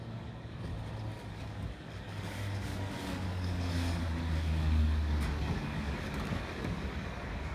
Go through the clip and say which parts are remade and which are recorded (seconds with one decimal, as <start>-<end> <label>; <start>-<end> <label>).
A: 0.0-0.7 remade; 0.7-1.2 recorded; 1.2-7.5 remade